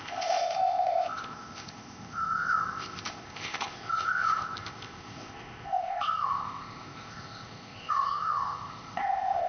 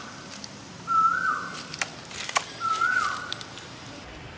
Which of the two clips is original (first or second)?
second